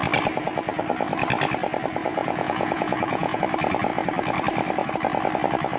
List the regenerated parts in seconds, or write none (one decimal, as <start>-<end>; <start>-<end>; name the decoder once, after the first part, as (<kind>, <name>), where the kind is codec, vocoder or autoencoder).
2.1-3.4 (vocoder, Vocos)